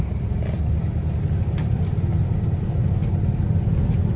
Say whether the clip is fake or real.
real